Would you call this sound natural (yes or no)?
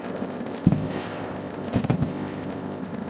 no